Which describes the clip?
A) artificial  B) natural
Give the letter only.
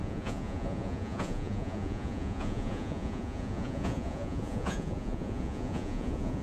A